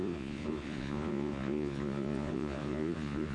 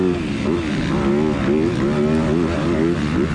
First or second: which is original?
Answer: second